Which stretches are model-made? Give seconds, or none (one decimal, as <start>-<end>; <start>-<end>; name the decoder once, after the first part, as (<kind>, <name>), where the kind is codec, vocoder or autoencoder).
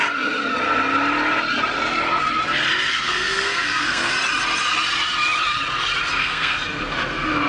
2.9-4.1 (codec, SNAC); 6.2-7.5